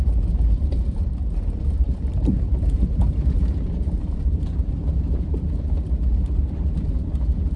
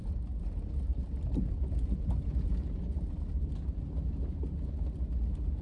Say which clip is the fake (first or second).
first